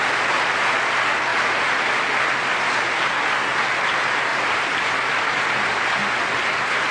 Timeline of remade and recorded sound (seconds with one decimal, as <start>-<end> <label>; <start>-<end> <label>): 0.0-1.3 recorded; 1.3-1.9 remade; 1.9-4.3 recorded; 4.3-4.9 remade; 4.9-6.9 recorded